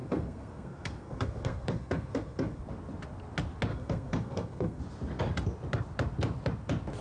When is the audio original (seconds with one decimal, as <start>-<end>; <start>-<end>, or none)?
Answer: 2.6-3.7; 4.8-7.0